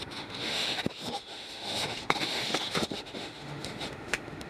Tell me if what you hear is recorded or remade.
remade